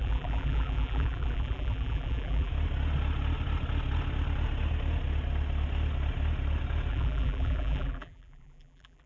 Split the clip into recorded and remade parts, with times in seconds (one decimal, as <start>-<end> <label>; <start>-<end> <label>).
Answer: 0.0-2.5 remade; 2.5-6.9 recorded; 6.9-9.1 remade